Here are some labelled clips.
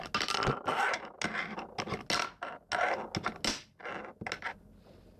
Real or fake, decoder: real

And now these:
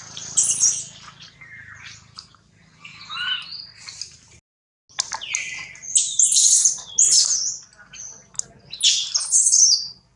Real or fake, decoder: real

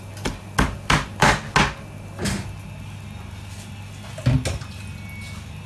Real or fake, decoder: real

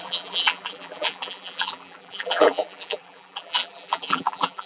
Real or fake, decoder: fake, vocoder, BigVGAN v2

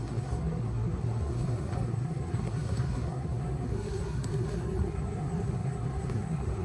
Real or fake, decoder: fake, codec, SNAC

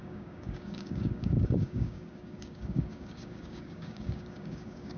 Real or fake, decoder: fake, codec, DAC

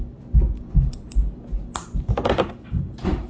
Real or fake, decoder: real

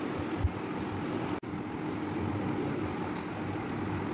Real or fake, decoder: real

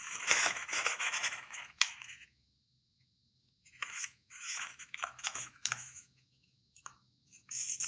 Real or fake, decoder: fake, autoencoder, DAC-VAE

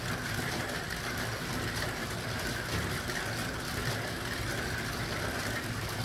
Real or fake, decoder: real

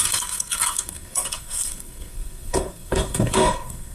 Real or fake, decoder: fake, codec, SNAC